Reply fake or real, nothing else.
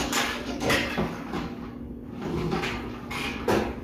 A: fake